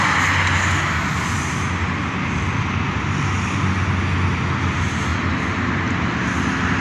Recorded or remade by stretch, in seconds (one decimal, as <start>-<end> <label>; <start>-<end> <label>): 0.0-6.8 recorded